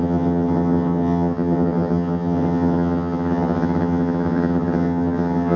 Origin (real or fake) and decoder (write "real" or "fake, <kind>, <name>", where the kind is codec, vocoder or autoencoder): fake, vocoder, HiFi-GAN